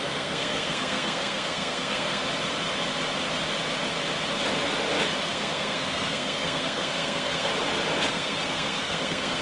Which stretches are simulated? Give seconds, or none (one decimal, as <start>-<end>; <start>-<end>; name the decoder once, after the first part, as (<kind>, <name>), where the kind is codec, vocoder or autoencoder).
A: 0.0-2.2 (codec, SNAC); 5.2-7.5; 8.1-9.4